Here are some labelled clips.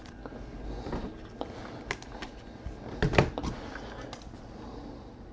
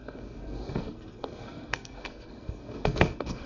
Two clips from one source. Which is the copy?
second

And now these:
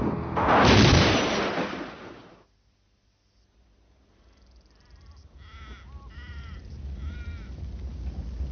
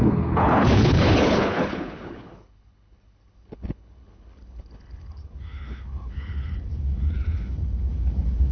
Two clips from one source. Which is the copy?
second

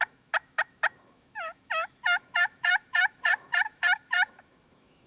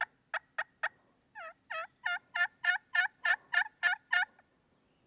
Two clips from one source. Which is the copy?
first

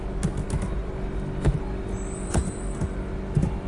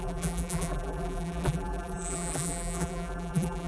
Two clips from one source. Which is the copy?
second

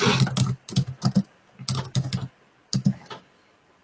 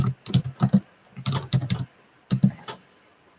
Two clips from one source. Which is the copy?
second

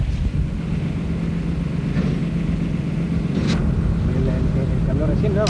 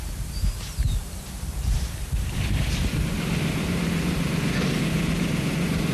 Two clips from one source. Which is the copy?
second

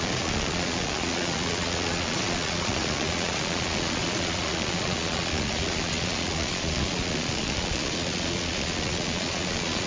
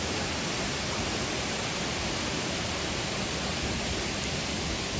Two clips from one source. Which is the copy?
first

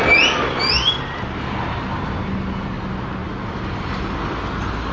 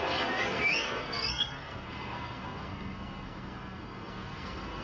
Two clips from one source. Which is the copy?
second